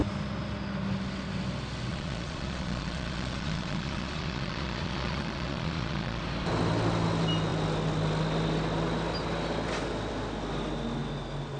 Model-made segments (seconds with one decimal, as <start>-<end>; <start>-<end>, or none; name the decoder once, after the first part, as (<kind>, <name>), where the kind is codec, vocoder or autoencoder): 1.9-6.2 (vocoder, Vocos)